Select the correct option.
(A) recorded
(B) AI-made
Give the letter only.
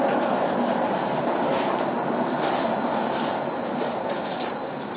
B